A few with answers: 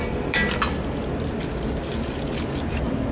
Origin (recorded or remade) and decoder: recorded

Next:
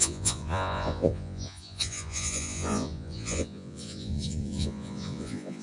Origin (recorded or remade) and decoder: remade, vocoder, Vocos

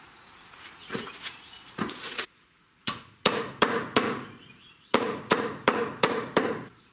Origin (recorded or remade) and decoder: remade, vocoder, Vocos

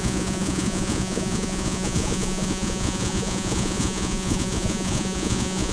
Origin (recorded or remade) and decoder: remade, vocoder, Vocos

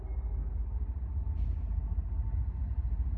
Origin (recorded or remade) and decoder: recorded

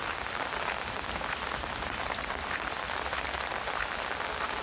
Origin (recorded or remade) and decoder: recorded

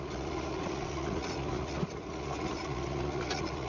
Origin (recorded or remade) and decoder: remade, vocoder, Vocos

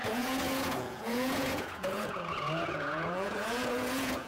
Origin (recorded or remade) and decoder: remade, vocoder, Vocos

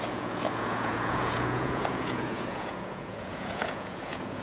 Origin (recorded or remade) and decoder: remade, vocoder, Vocos